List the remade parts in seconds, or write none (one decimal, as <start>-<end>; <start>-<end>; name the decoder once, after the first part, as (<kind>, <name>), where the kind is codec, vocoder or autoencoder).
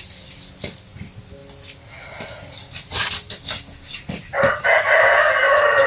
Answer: none